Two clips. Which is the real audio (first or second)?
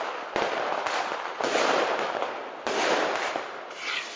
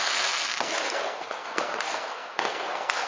first